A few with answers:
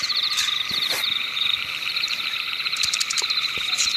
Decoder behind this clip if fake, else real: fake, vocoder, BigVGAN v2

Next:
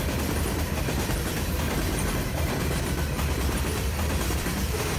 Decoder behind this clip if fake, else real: fake, vocoder, BigVGAN v2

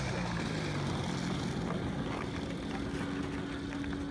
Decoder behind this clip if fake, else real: real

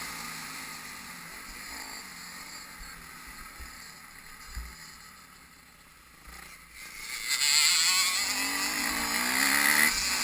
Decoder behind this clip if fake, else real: real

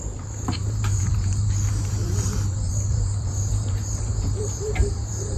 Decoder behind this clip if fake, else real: fake, vocoder, BigVGAN v2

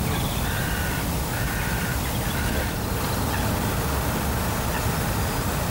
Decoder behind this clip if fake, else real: real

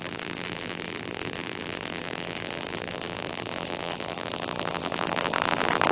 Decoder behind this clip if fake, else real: fake, vocoder, BigVGAN v2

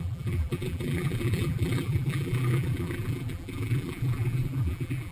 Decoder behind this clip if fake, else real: fake, vocoder, BigVGAN v2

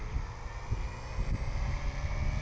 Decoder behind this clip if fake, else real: real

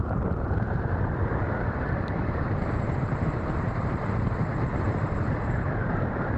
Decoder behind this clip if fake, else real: fake, vocoder, BigVGAN v2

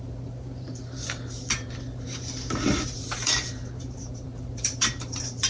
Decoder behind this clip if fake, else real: fake, vocoder, BigVGAN v2